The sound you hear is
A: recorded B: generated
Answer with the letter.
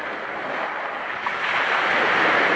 A